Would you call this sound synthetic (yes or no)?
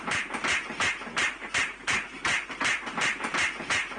yes